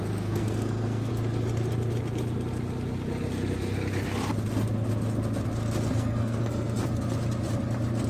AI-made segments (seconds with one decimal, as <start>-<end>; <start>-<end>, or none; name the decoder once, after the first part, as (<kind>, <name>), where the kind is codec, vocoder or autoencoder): 0.0-1.1 (codec, SNAC); 5.9-6.8